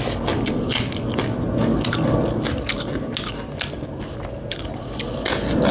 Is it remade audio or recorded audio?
recorded